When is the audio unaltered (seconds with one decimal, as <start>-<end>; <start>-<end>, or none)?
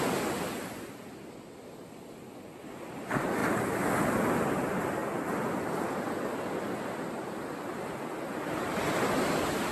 0.0-9.7